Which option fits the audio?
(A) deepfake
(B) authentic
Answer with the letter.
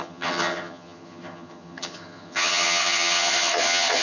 A